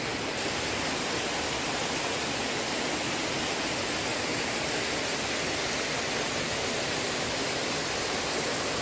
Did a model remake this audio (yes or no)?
no